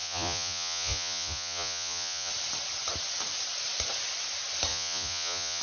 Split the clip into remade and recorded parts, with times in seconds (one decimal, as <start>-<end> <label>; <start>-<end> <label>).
0.0-2.3 remade; 2.3-4.7 recorded; 4.7-5.6 remade